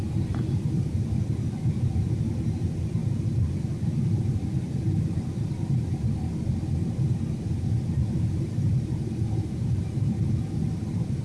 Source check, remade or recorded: recorded